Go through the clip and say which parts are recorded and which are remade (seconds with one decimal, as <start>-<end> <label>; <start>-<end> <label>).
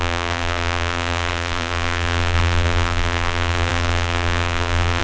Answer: 0.0-5.0 remade